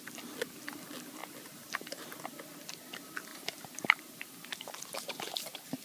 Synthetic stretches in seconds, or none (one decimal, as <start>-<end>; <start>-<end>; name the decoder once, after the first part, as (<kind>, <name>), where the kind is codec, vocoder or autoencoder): 1.2-2.7 (vocoder, BigVGAN v2); 3.3-5.8